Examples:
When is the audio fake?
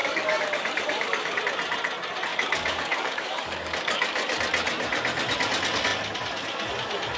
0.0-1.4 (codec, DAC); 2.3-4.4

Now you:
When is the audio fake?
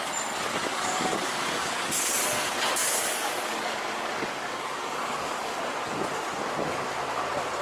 0.7-2.1 (codec, DAC); 2.8-5.6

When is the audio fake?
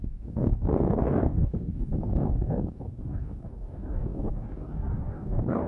0.0-5.7 (codec, DAC)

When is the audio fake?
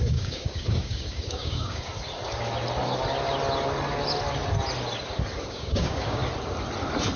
0.0-1.9 (codec, DAC); 5.5-6.2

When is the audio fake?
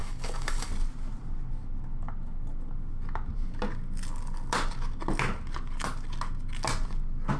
0.0-0.7 (codec, DAC)